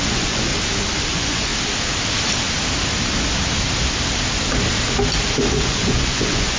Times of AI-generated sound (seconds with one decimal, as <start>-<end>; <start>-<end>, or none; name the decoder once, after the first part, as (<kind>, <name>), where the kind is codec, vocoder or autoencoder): 0.0-0.5 (vocoder, Vocos); 1.1-1.5; 5.5-6.6